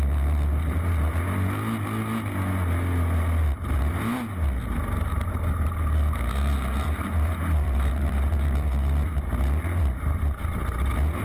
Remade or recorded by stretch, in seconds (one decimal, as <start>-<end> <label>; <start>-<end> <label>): 0.0-5.1 recorded; 5.1-10.2 remade; 10.2-11.2 recorded